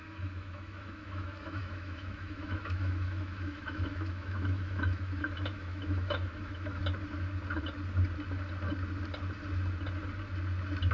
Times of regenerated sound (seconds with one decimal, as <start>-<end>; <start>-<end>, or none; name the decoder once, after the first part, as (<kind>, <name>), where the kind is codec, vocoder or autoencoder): 0.0-6.8 (autoencoder, DAC-VAE)